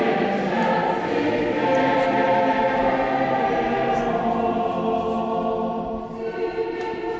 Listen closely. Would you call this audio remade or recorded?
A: recorded